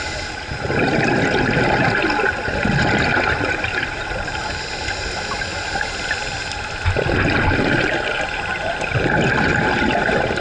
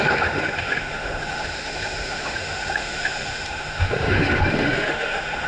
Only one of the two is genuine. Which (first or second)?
first